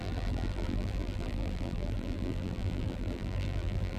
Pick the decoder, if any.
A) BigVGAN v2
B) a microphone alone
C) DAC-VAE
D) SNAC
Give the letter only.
A